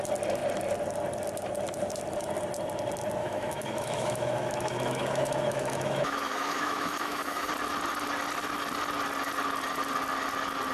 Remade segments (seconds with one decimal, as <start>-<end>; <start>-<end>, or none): 3.2-7.5